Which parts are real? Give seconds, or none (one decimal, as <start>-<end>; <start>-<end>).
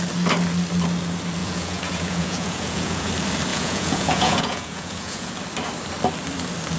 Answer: 0.0-1.4; 3.1-3.5; 5.3-6.8